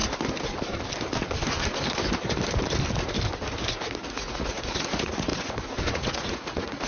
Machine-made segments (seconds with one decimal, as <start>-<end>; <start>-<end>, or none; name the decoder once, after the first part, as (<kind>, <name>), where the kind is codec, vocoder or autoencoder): 4.1-5.3 (vocoder, Vocos); 5.9-6.9